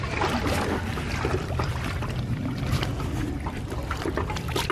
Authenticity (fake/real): real